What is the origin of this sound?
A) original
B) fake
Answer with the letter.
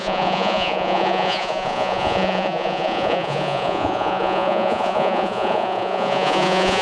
B